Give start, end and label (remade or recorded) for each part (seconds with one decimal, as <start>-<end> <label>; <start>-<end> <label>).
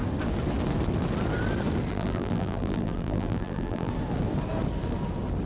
0.0-1.9 recorded; 1.9-3.9 remade; 3.9-5.5 recorded